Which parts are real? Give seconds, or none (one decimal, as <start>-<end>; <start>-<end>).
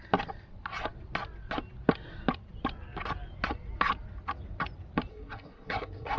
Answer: 0.0-5.1